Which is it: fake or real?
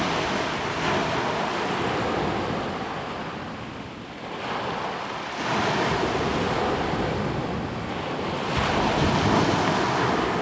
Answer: real